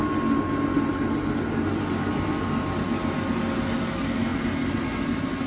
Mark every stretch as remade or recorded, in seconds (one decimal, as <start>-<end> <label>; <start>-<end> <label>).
0.0-5.5 recorded